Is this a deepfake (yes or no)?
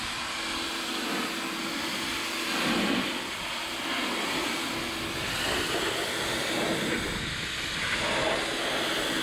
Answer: no